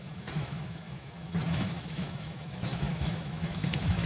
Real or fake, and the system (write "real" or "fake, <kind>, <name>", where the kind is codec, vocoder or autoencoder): fake, autoencoder, DAC-VAE